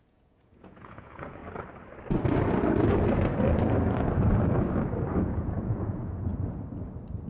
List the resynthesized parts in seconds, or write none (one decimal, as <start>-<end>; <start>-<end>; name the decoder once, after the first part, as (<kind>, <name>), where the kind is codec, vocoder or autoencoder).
0.0-1.4 (vocoder, Vocos); 5.2-6.3